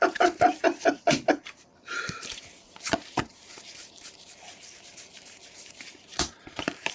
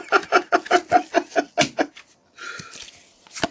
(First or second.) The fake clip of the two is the first